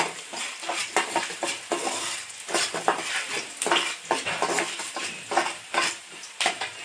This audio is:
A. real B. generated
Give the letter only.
A